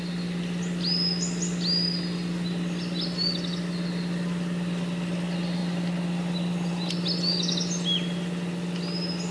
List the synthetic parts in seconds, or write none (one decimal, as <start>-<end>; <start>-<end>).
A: none